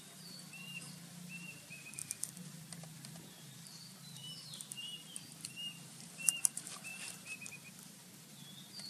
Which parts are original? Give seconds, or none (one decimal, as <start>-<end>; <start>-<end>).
none